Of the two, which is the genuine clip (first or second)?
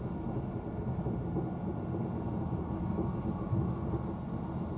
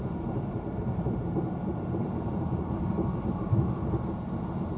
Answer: first